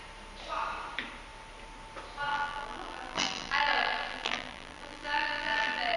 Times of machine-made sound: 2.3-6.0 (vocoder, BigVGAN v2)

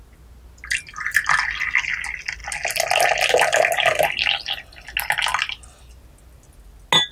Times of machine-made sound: none

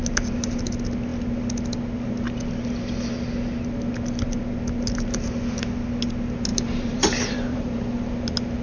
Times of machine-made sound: 6.5-7.8 (vocoder, BigVGAN v2)

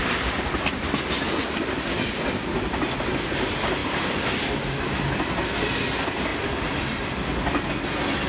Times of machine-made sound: 2.5-3.1 (vocoder, BigVGAN v2)

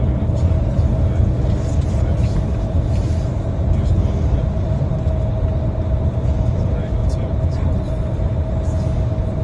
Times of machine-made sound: 7.0-7.8 (vocoder, BigVGAN v2)

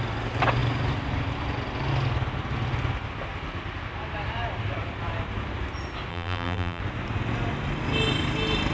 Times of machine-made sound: 6.1-6.8 (vocoder, BigVGAN v2)

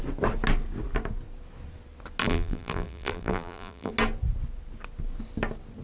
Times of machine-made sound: 2.2-3.9 (vocoder, BigVGAN v2)